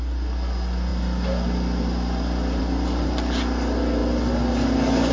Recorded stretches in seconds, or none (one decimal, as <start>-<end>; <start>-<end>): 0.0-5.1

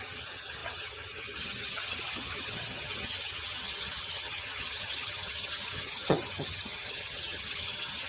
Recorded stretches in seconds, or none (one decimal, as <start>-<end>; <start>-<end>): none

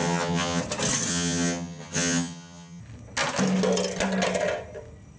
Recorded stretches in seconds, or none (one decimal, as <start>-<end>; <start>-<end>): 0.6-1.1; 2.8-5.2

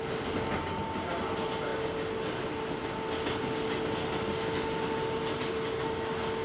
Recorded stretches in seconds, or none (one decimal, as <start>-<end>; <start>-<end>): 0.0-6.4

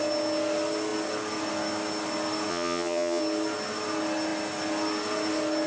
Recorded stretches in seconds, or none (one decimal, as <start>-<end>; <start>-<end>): 0.0-2.5; 3.2-5.7